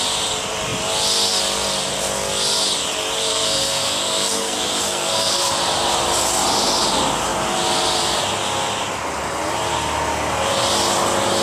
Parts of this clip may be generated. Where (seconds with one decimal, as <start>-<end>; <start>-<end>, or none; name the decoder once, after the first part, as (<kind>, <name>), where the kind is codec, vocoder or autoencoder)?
3.3-5.5 (codec, SNAC)